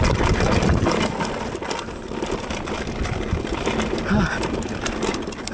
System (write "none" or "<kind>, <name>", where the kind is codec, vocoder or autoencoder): none